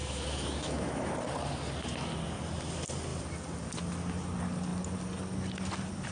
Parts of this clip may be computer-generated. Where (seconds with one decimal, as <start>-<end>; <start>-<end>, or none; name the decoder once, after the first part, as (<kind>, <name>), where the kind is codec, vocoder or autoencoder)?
0.0-1.1 (autoencoder, DAC-VAE)